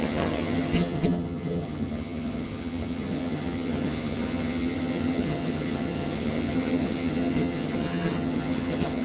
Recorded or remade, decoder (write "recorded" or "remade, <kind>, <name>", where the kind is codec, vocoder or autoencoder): remade, vocoder, HiFi-GAN